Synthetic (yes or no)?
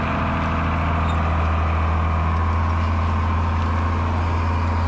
no